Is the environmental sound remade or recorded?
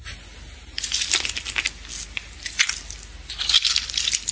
recorded